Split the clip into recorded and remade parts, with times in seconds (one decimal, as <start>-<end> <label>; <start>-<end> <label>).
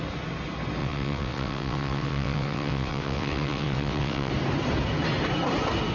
0.0-0.8 recorded; 0.8-4.3 remade; 4.3-5.9 recorded